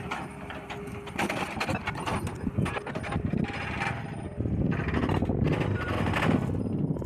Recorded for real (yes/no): yes